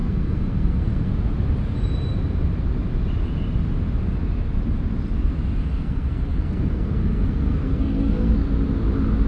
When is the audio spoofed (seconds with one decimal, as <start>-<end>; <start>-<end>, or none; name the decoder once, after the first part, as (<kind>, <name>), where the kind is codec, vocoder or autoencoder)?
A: 0.0-1.1 (codec, SNAC); 5.6-8.3